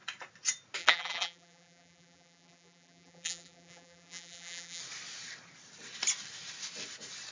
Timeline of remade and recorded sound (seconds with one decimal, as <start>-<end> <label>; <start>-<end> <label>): 0.0-0.8 recorded; 0.8-4.8 remade; 4.8-7.3 recorded